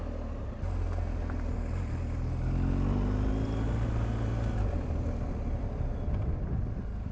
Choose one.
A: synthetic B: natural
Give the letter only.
B